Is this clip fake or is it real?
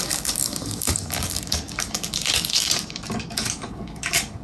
fake